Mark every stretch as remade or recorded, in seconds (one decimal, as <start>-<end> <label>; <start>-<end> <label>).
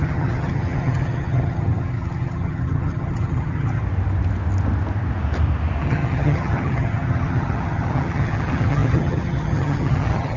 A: 0.0-3.8 remade; 3.8-5.8 recorded; 5.8-10.4 remade